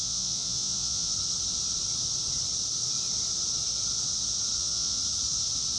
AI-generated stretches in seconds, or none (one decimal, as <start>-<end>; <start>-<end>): 0.0-1.1; 4.6-5.0